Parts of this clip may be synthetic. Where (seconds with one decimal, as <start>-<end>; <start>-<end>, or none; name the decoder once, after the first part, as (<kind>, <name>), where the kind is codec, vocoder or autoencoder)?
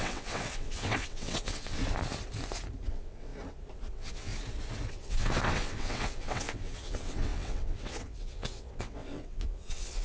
0.0-1.8 (vocoder, WaveNeXt); 2.9-3.3; 3.9-4.3; 4.9-10.0